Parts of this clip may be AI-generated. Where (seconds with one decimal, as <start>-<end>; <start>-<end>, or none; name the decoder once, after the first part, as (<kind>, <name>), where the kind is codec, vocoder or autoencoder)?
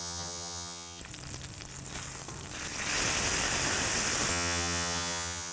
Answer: 0.0-1.0 (vocoder, HiFi-GAN); 4.3-5.5